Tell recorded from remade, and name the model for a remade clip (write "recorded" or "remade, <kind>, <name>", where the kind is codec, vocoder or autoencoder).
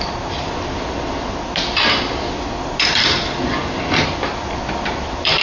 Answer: recorded